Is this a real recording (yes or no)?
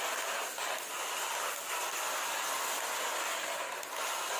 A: yes